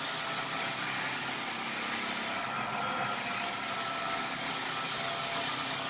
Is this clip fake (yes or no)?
no